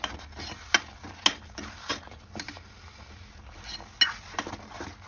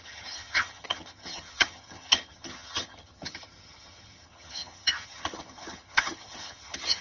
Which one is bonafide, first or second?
first